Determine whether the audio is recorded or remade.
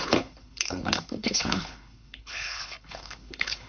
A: remade